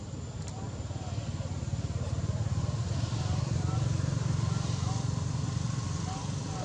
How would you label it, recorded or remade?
recorded